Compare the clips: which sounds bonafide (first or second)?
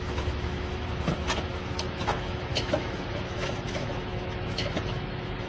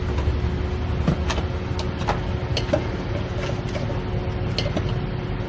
second